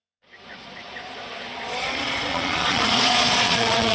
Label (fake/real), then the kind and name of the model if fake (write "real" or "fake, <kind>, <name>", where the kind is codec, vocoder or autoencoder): fake, vocoder, Vocos